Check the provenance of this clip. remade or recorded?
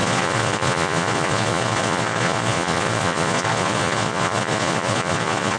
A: remade